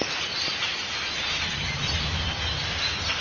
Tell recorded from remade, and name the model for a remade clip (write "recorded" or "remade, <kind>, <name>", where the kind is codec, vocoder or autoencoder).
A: recorded